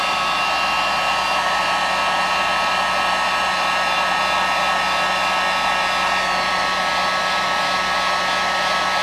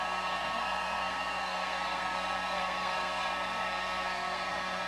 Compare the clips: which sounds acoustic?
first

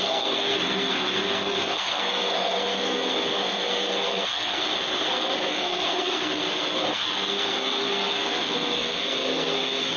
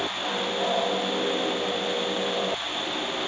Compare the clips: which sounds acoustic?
second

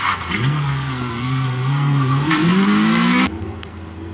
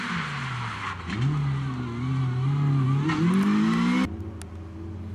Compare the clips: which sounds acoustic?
second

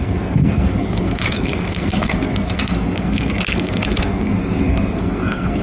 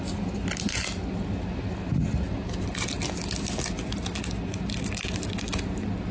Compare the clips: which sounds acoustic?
second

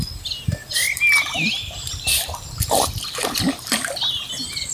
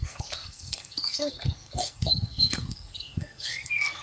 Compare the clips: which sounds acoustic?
first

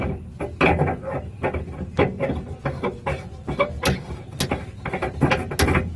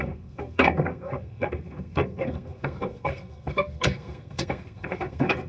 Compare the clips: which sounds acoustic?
first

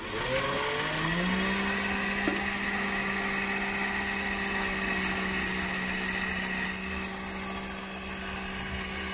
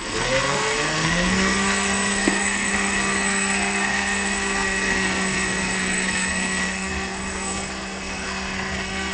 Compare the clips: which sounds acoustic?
first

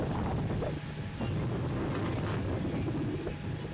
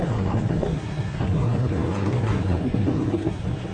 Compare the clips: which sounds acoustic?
first